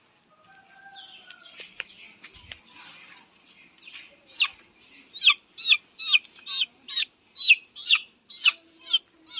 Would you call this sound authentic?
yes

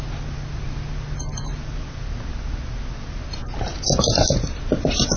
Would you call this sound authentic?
yes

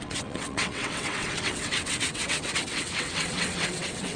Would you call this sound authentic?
no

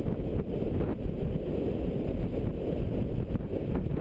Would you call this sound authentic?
yes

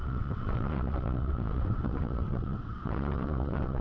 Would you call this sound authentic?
no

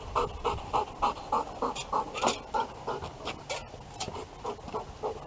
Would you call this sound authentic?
yes